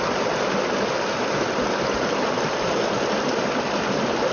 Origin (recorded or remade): recorded